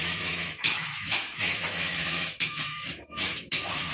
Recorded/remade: remade